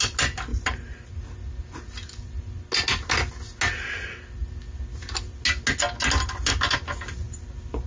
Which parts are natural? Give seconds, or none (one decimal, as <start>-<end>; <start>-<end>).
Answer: 0.0-0.5; 1.1-7.9